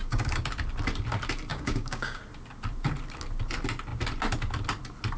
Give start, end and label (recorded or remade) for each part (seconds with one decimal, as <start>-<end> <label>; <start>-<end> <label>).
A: 0.0-0.5 remade; 0.5-1.5 recorded; 1.5-2.2 remade; 2.2-5.2 recorded